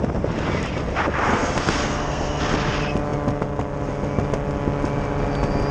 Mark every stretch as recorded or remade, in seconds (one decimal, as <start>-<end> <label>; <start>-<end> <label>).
0.0-1.3 recorded; 1.3-2.4 remade; 2.4-5.7 recorded